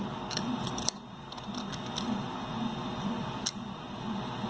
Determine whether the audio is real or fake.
real